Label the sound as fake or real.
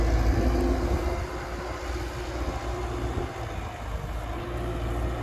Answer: real